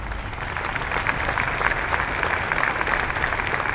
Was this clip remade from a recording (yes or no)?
no